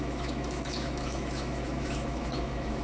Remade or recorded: remade